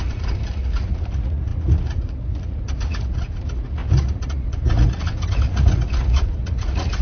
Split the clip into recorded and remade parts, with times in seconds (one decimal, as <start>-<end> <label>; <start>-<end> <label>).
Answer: 0.0-7.0 remade